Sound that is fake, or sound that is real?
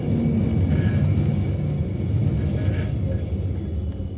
real